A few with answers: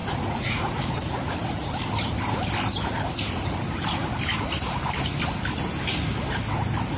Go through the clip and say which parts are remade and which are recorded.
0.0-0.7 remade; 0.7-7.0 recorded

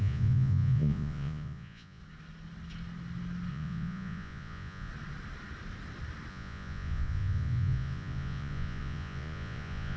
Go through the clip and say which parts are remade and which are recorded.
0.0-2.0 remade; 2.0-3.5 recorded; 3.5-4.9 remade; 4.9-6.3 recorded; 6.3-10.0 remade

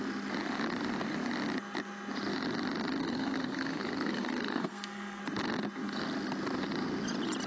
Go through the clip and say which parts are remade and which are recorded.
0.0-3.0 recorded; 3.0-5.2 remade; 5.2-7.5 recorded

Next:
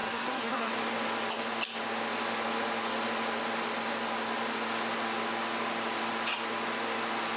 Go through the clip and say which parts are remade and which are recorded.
0.0-0.7 remade; 0.7-7.4 recorded

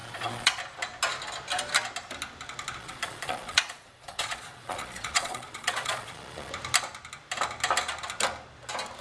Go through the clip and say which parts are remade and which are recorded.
0.0-0.6 remade; 0.6-2.8 recorded; 2.8-6.5 remade; 6.5-9.0 recorded

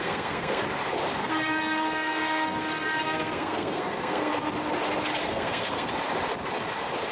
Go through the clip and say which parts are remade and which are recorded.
0.0-0.6 remade; 0.6-1.2 recorded; 1.2-4.3 remade; 4.3-5.2 recorded; 5.2-5.9 remade; 5.9-7.1 recorded